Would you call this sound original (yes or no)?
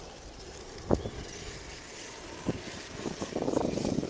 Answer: yes